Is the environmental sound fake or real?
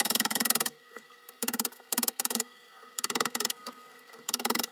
fake